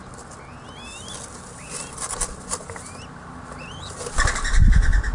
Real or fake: real